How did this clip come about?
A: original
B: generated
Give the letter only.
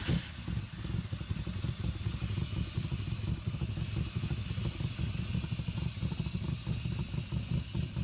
A